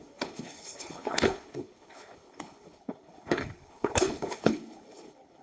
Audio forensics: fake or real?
fake